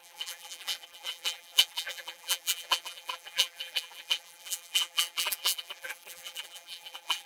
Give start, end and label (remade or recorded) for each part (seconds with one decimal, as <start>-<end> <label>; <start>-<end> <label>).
0.0-7.3 remade